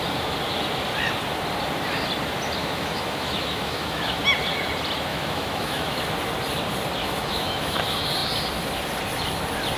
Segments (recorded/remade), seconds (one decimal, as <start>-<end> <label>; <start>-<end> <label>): 0.0-2.6 recorded; 2.6-4.2 remade; 4.2-5.1 recorded; 5.1-6.0 remade; 6.0-7.0 recorded; 7.0-7.8 remade; 7.8-9.8 recorded